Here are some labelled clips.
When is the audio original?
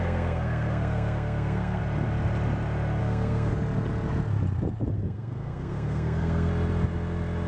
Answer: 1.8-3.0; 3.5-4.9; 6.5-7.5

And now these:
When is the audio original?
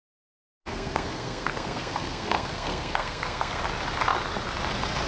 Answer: 0.0-0.5; 3.6-5.1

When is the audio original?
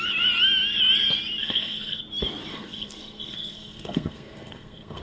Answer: 0.0-1.4; 2.0-2.5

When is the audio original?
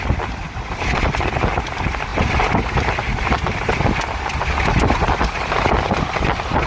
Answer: 0.0-6.7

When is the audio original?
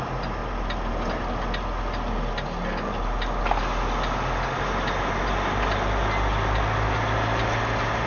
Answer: 0.0-8.1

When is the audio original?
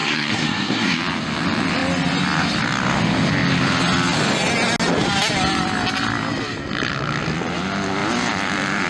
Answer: 1.0-8.9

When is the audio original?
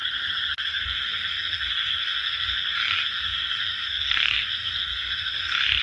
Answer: 0.0-0.5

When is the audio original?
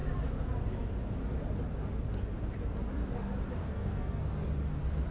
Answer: 0.0-3.6; 4.3-5.1